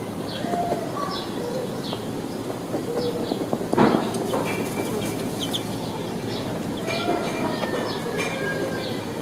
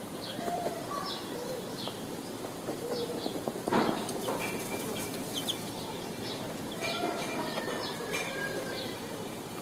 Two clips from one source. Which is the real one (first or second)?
first